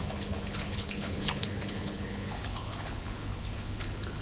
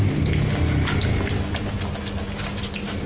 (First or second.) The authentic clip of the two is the second